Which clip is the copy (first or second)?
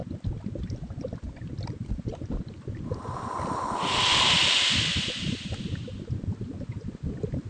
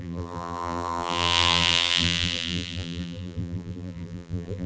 second